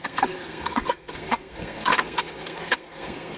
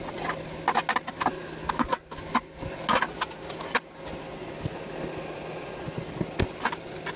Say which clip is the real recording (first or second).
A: second